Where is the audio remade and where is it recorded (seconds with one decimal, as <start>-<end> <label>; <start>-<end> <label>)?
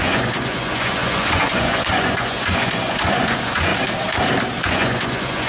0.0-3.7 remade; 3.7-4.6 recorded; 4.6-5.5 remade